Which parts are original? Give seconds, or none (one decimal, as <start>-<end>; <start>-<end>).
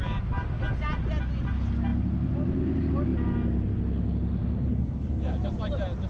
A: 0.0-4.7; 5.2-6.1